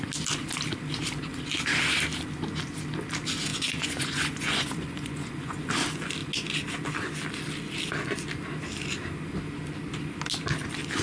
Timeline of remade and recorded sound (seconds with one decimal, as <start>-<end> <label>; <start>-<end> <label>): 0.0-3.5 recorded; 3.5-5.7 remade; 5.7-11.0 recorded